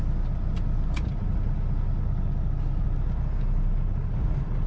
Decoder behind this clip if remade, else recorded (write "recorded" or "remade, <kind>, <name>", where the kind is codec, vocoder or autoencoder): recorded